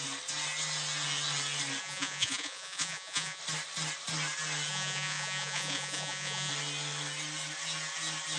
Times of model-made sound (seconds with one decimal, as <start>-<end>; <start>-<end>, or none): 1.8-3.4; 4.7-6.5